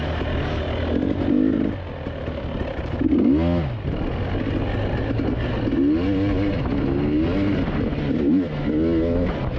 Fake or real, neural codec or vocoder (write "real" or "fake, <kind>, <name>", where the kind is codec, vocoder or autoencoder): real